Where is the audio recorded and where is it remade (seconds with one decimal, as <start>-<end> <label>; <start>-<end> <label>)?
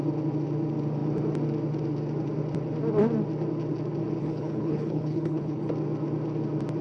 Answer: 0.0-4.2 recorded; 4.2-5.7 remade; 5.7-6.8 recorded